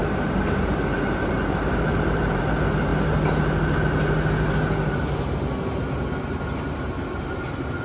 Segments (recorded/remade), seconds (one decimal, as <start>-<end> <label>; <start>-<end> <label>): 0.0-2.4 remade; 2.4-7.8 recorded